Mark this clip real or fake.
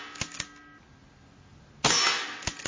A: real